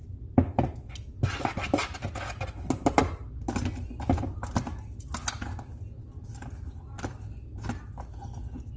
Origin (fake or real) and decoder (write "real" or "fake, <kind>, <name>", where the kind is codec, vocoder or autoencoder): real